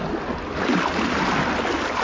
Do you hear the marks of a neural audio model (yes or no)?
no